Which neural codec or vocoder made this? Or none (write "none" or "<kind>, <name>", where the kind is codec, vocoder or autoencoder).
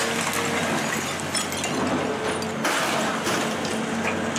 none